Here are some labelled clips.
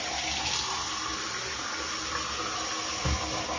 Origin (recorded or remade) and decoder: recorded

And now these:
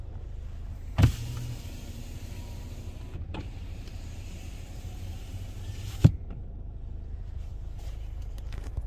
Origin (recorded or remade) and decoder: remade, vocoder, BigVGAN v2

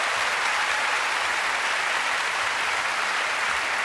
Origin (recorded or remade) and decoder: recorded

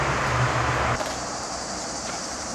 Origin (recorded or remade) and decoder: remade, vocoder, BigVGAN v2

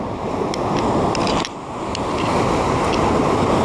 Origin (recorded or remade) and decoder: recorded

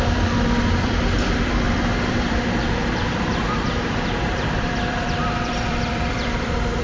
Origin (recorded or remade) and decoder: remade, vocoder, BigVGAN v2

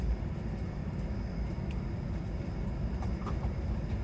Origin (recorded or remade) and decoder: recorded